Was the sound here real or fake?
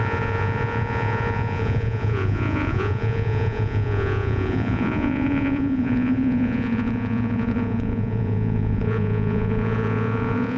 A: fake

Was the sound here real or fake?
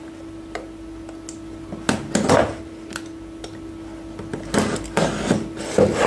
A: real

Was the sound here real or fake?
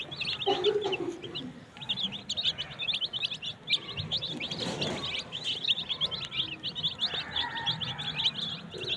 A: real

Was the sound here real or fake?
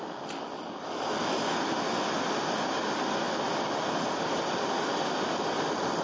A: real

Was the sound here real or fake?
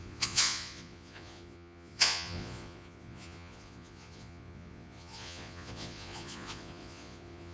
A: fake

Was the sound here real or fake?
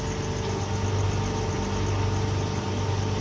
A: real